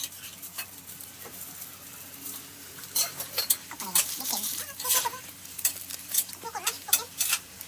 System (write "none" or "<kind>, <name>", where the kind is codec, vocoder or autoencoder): vocoder, BigVGAN v2